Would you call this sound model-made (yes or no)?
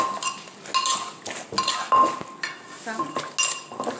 no